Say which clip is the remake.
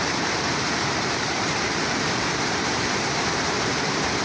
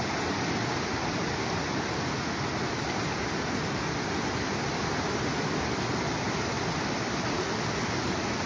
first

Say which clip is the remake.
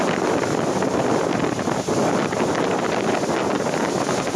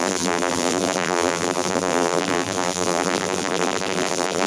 second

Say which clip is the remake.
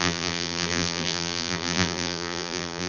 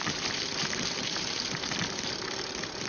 first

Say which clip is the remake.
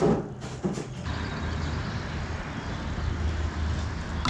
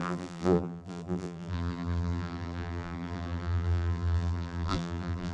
second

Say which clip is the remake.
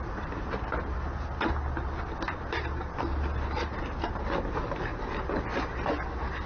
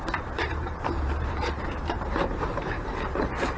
second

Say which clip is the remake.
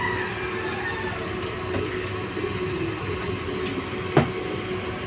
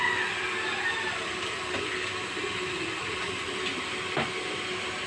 second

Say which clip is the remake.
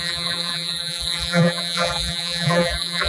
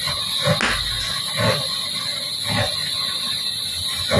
first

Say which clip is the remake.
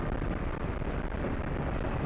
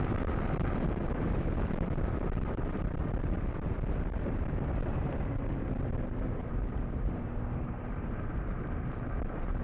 second